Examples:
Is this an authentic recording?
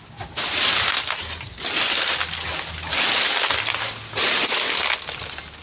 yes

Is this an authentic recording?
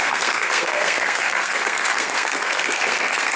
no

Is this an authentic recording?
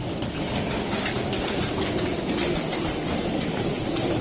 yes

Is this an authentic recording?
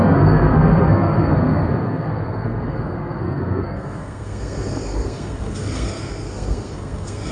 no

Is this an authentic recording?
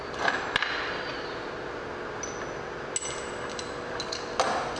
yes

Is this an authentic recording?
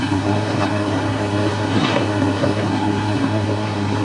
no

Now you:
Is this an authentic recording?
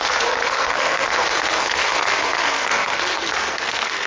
no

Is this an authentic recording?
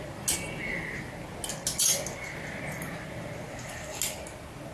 yes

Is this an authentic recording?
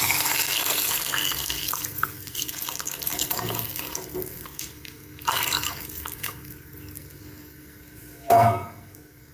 no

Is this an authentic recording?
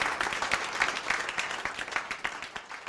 yes